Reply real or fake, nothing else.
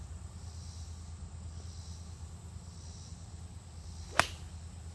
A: real